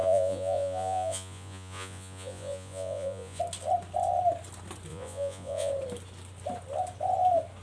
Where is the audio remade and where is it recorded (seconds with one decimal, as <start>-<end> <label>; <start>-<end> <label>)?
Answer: 0.0-3.4 remade; 3.4-4.9 recorded; 4.9-5.7 remade; 5.7-7.6 recorded